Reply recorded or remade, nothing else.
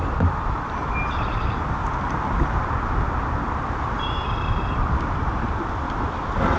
recorded